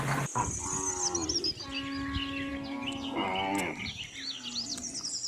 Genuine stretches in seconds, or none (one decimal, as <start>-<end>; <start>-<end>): 0.0-5.3